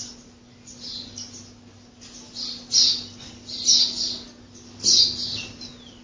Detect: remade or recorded recorded